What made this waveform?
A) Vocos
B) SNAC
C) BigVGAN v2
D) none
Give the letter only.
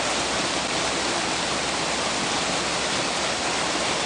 D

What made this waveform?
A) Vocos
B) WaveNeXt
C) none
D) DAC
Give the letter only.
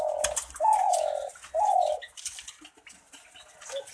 C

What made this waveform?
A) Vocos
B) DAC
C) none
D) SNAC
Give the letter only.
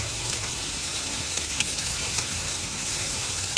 D